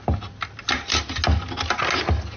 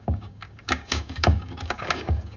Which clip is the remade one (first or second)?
second